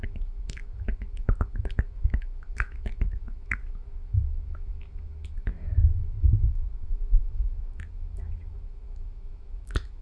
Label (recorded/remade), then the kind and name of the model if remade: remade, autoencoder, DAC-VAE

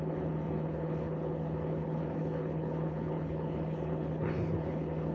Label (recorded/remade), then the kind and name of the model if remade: remade, codec, HILCodec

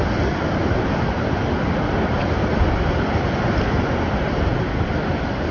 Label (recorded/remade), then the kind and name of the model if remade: recorded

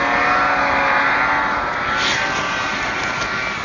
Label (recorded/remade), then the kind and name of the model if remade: recorded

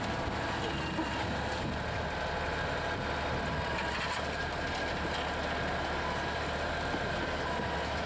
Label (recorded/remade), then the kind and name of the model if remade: recorded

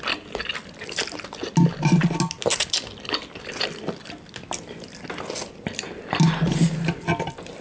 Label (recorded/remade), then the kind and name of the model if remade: recorded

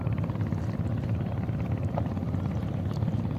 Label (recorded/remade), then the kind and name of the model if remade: recorded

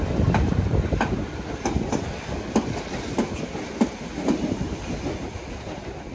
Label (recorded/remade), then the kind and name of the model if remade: recorded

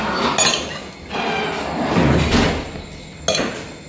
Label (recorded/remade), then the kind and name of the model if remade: recorded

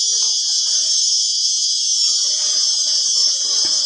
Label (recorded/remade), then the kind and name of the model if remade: remade, vocoder, Vocos